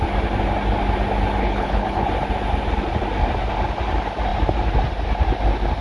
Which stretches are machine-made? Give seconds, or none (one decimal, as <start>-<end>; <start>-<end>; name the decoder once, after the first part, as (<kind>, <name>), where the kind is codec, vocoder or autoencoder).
1.4-2.1 (codec, HILCodec)